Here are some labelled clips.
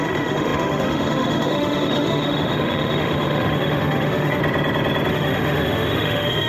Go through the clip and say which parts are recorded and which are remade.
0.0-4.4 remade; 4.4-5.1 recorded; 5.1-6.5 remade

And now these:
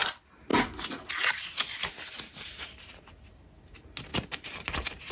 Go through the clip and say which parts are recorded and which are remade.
0.0-1.8 recorded; 1.8-2.6 remade; 2.6-4.1 recorded; 4.1-5.1 remade

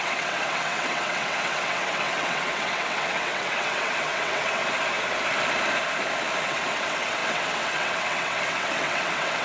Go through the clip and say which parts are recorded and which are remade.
0.0-4.6 remade; 4.6-6.4 recorded; 6.4-9.4 remade

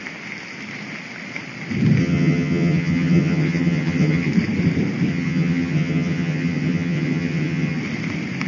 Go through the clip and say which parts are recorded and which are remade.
0.0-2.0 recorded; 2.0-4.3 remade; 4.3-5.1 recorded; 5.1-7.8 remade; 7.8-8.5 recorded

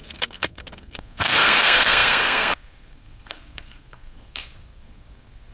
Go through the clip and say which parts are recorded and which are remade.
0.0-5.5 remade

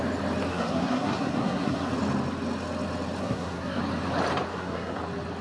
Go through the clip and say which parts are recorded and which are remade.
0.0-0.5 recorded; 0.5-1.9 remade; 1.9-3.2 recorded; 3.2-3.8 remade; 3.8-4.5 recorded; 4.5-5.0 remade; 5.0-5.4 recorded

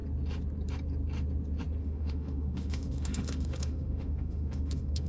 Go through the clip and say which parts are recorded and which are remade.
0.0-1.8 recorded; 1.8-5.1 remade

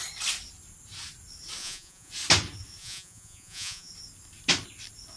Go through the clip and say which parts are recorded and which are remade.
0.0-1.6 recorded; 1.6-2.1 remade; 2.1-2.8 recorded; 2.8-3.9 remade; 3.9-5.2 recorded